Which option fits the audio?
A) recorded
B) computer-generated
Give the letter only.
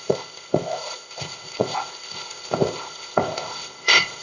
B